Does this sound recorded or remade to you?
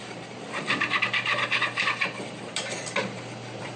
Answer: remade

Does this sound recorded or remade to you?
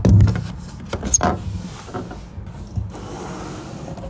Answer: recorded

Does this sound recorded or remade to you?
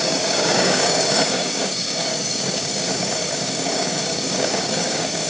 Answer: remade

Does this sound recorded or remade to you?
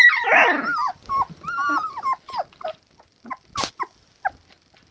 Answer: recorded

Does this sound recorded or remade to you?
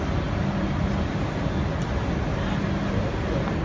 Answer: recorded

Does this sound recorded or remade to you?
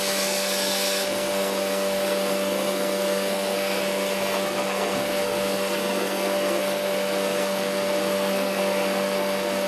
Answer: remade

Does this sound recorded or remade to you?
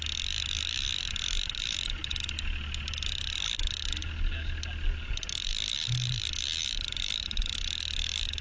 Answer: recorded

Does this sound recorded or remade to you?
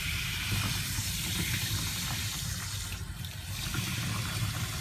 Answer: recorded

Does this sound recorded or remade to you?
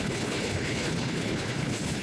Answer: remade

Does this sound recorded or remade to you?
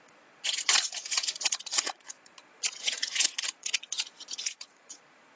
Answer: remade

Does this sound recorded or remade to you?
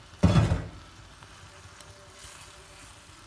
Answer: recorded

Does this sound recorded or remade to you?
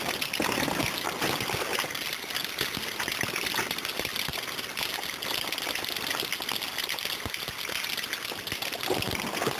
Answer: recorded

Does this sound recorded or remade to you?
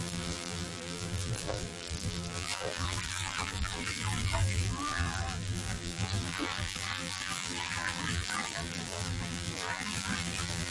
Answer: remade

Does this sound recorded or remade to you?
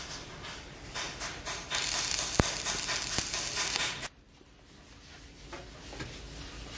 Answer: recorded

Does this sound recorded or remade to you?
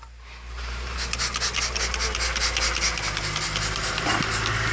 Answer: recorded